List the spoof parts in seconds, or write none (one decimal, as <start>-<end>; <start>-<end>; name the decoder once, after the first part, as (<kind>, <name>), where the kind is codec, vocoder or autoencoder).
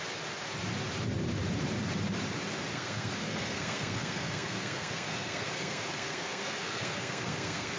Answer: 2.7-7.8 (codec, SNAC)